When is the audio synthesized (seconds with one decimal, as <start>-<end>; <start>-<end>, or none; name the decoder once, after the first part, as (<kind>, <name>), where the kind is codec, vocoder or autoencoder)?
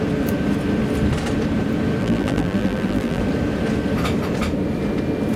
2.0-3.2 (vocoder, BigVGAN v2)